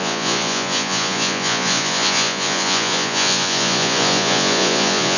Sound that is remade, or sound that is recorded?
remade